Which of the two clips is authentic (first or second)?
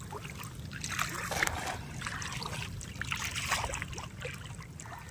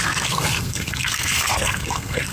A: first